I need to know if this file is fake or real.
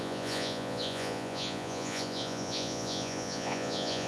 fake